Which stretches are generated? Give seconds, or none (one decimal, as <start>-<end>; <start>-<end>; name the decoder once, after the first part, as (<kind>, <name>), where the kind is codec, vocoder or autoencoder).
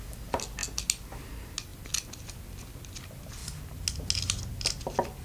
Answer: none